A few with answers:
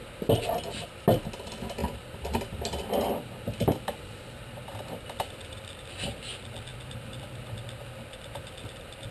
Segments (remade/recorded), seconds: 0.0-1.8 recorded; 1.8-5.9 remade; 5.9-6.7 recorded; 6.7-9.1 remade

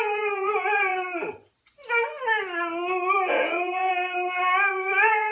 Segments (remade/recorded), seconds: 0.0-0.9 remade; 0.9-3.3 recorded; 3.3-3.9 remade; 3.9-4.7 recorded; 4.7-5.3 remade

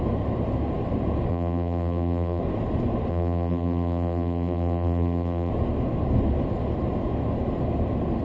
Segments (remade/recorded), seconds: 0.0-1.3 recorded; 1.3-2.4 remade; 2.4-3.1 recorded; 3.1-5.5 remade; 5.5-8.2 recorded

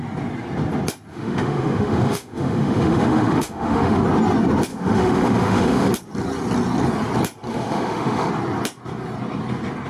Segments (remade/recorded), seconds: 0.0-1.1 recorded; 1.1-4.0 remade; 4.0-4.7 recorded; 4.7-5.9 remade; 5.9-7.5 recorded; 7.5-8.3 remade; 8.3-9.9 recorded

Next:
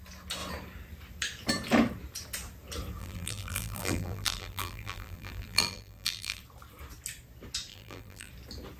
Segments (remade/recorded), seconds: 0.0-3.0 recorded; 3.0-6.4 remade; 6.4-7.7 recorded; 7.7-8.3 remade; 8.3-8.8 recorded